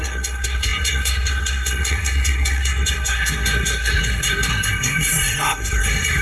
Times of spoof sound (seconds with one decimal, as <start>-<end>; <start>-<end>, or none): 0.0-6.2